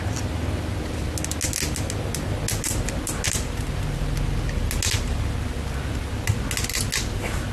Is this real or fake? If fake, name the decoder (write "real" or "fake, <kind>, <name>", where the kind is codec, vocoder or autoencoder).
real